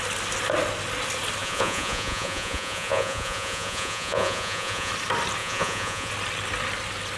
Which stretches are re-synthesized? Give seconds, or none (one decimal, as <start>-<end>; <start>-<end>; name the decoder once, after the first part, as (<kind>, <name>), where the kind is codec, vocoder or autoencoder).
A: 1.4-4.9 (vocoder, Vocos); 5.4-6.1